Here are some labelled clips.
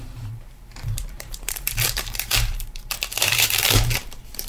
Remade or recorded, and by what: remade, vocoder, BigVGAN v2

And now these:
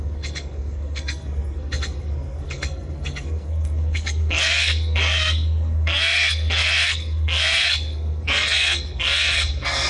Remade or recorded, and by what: remade, codec, SNAC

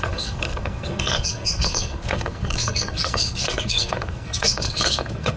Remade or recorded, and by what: remade, codec, SNAC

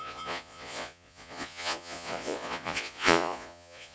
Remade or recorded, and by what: remade, vocoder, Vocos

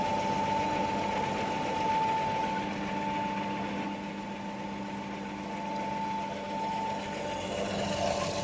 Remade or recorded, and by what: recorded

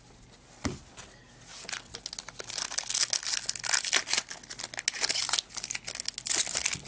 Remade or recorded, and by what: recorded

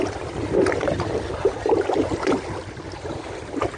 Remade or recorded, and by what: recorded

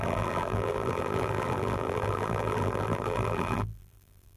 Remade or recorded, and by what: remade, vocoder, BigVGAN v2